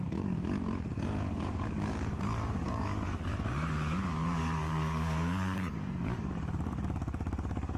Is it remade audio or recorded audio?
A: remade